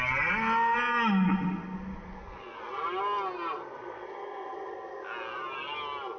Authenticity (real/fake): real